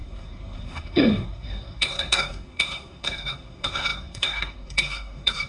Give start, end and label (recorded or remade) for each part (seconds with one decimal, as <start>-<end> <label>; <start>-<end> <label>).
0.0-5.5 remade